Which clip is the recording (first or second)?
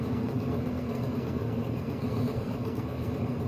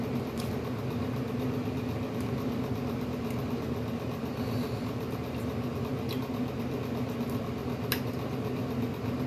second